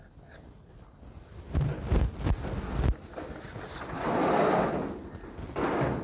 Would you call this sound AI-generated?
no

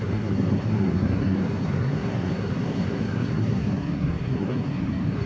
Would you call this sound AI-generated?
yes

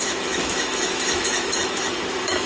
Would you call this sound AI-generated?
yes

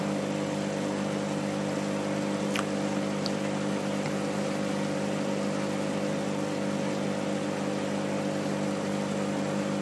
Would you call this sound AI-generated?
no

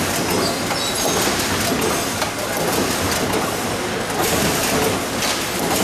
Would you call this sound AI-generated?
no